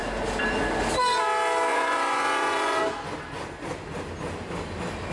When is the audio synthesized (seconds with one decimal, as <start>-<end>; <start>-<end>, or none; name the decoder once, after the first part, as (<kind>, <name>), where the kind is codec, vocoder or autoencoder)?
1.7-2.8 (vocoder, Vocos)